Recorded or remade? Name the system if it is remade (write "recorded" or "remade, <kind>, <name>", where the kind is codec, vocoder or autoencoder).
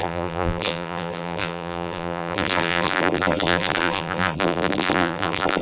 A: remade, vocoder, BigVGAN v2